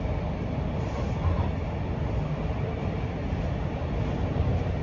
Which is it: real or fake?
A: real